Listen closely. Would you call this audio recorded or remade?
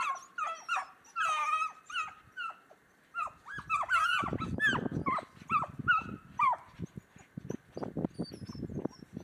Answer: recorded